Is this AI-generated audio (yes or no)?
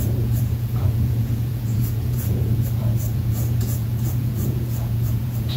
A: yes